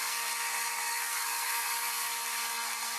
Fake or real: fake